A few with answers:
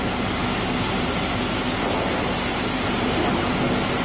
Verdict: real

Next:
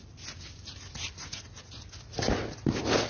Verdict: real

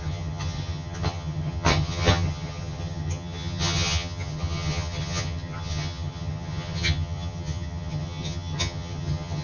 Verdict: fake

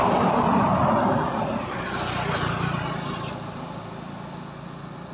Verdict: real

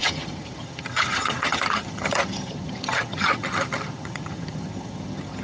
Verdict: fake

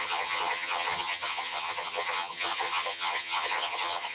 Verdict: fake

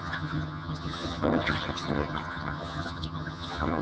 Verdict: fake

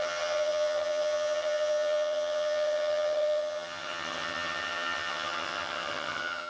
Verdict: fake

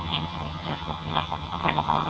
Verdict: fake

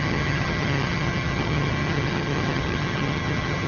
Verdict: fake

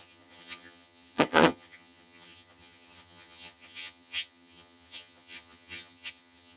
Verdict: fake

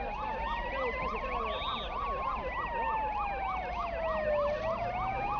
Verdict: real